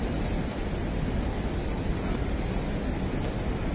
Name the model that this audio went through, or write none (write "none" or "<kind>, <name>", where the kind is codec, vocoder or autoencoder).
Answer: none